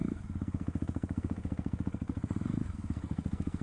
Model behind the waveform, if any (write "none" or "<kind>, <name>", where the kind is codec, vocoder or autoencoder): codec, SNAC